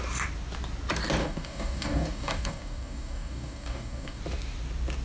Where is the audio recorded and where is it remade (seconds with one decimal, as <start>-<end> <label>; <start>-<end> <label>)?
0.0-1.2 recorded; 1.2-4.2 remade; 4.2-5.0 recorded

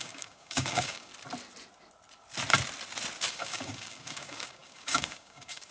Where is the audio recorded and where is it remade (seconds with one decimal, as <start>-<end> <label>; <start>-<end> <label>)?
0.0-1.1 remade; 1.1-3.3 recorded; 3.3-5.7 remade

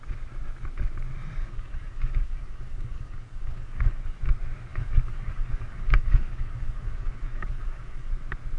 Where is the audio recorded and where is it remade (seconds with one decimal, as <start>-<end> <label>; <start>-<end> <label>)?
0.0-1.4 recorded; 1.4-4.0 remade; 4.0-4.7 recorded; 4.7-8.1 remade; 8.1-8.6 recorded

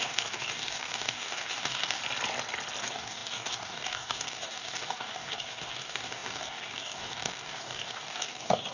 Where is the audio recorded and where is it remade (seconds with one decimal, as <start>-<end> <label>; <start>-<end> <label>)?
0.0-2.0 remade; 2.0-2.8 recorded; 2.8-8.7 remade

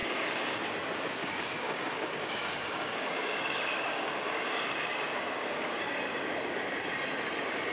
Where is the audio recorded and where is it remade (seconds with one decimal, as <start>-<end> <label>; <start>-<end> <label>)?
0.0-0.6 remade; 0.6-1.2 recorded; 1.2-5.8 remade; 5.8-7.7 recorded

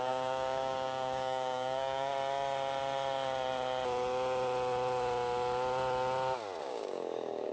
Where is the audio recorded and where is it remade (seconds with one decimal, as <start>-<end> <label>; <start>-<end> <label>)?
0.0-2.1 remade; 2.1-6.6 recorded; 6.6-7.5 remade

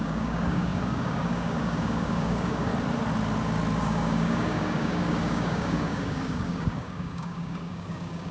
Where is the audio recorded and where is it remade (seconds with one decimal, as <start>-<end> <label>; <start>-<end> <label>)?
0.0-2.7 remade; 2.7-3.8 recorded; 3.8-8.3 remade

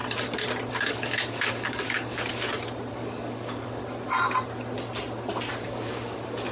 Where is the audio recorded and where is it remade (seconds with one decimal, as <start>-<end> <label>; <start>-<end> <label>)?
0.0-0.7 recorded; 0.7-2.3 remade; 2.3-2.9 recorded; 2.9-3.8 remade; 3.8-5.5 recorded; 5.5-6.5 remade